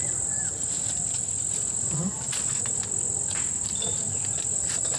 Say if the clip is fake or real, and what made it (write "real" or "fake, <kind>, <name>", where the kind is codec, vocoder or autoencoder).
fake, vocoder, BigVGAN v2